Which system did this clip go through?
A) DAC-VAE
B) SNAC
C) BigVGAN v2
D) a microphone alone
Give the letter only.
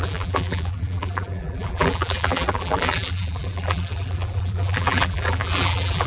C